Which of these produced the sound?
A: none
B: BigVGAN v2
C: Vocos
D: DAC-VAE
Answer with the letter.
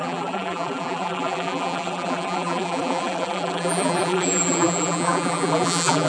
B